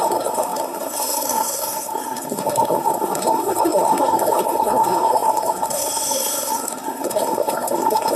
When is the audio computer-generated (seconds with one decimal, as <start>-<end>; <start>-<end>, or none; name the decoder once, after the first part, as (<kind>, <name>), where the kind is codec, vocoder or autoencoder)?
0.0-8.2 (codec, SNAC)